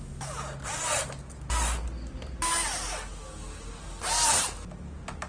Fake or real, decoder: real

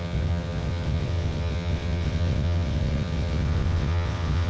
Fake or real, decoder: fake, vocoder, WaveNeXt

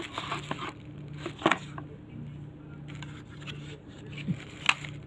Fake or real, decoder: real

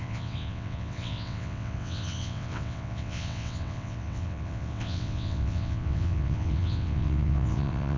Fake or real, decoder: fake, vocoder, WaveNeXt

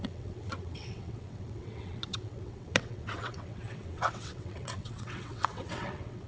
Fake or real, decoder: fake, vocoder, WaveNeXt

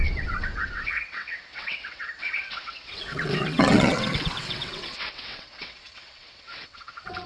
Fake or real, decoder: fake, vocoder, WaveNeXt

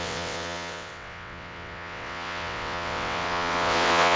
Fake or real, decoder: fake, vocoder, WaveNeXt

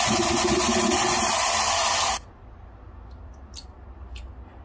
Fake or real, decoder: real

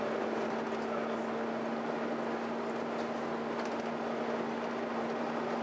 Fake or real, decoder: real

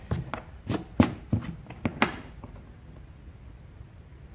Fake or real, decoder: real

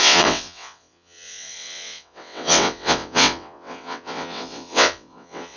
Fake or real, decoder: fake, vocoder, WaveNeXt